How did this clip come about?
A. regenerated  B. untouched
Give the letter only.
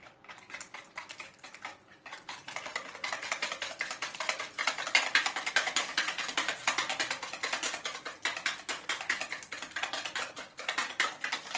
B